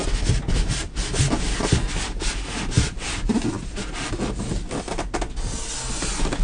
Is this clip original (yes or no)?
yes